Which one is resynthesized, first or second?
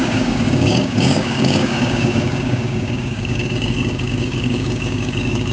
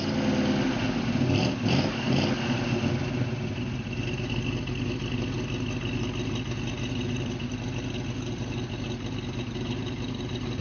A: first